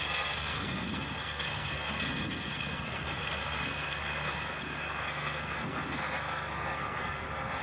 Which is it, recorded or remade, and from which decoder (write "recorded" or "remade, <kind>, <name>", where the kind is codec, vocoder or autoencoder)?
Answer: remade, codec, SNAC